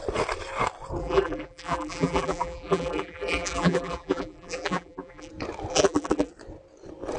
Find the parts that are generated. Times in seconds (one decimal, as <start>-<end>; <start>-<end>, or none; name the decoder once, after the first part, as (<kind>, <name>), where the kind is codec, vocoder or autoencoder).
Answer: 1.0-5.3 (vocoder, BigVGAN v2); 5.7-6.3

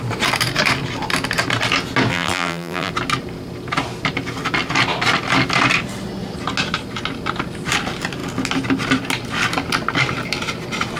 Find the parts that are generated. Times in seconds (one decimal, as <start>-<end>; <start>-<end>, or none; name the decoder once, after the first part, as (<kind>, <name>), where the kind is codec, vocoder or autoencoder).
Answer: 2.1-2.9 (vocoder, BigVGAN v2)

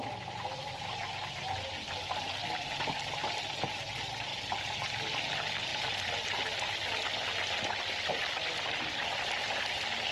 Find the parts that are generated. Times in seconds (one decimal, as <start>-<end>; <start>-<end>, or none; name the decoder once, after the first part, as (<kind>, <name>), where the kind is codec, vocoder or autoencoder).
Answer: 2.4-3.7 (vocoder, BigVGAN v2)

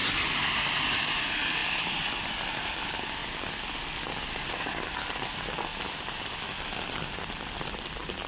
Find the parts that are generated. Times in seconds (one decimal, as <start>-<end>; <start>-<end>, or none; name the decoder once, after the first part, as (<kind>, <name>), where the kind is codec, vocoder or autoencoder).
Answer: 0.0-1.1 (vocoder, BigVGAN v2); 3.2-3.8; 5.7-6.6

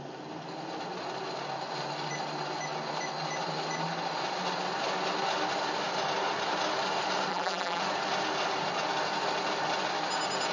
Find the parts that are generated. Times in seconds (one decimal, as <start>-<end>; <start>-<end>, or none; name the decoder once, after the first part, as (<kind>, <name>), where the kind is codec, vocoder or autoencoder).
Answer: 7.3-7.8 (vocoder, BigVGAN v2)

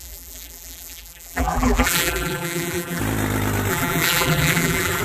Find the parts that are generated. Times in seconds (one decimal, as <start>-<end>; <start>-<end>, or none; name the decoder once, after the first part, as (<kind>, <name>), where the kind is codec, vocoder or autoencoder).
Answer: 0.0-3.0 (vocoder, BigVGAN v2); 3.7-5.0